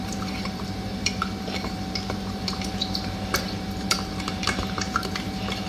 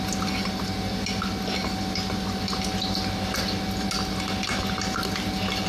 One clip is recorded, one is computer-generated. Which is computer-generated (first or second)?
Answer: first